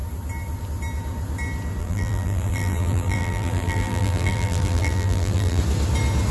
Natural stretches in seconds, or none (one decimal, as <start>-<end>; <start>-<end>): 0.0-1.8; 5.6-6.3